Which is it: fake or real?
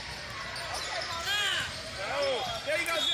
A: real